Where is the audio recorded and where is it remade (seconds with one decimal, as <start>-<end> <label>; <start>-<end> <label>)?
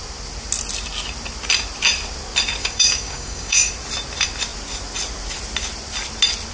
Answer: 0.0-2.6 recorded; 2.6-3.7 remade; 3.7-6.5 recorded